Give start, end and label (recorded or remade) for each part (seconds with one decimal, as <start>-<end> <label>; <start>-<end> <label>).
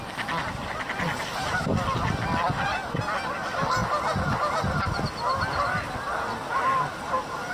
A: 0.0-7.5 recorded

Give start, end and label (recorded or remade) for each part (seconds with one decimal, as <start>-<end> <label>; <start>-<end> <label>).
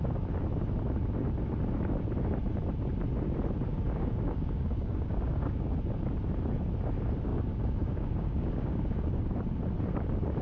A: 0.0-3.7 recorded; 3.7-5.8 remade; 5.8-7.3 recorded; 7.3-9.2 remade; 9.2-10.4 recorded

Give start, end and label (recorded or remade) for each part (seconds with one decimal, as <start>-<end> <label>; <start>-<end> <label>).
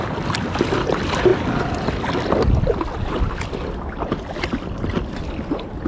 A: 0.0-5.9 recorded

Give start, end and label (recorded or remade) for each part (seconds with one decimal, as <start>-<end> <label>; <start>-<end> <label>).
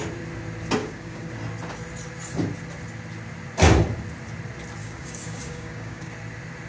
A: 0.0-0.8 recorded; 0.8-1.3 remade; 1.3-4.8 recorded; 4.8-6.1 remade; 6.1-6.7 recorded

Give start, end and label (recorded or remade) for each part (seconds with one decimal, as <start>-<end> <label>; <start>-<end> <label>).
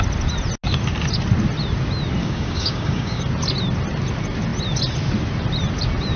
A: 0.0-2.2 recorded; 2.2-3.2 remade; 3.2-6.2 recorded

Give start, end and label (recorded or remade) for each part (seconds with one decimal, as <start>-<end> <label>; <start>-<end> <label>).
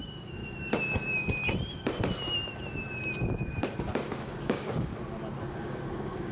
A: 0.0-0.4 remade; 0.4-4.2 recorded; 4.2-4.9 remade; 4.9-5.5 recorded; 5.5-6.3 remade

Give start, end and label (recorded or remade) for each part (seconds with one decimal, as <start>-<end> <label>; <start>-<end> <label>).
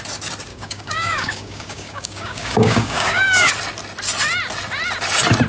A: 0.0-0.5 recorded; 0.5-3.5 remade; 3.5-5.5 recorded